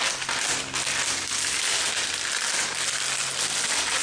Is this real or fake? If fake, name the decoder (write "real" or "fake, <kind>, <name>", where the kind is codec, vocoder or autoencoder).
real